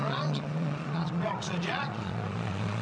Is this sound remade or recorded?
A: remade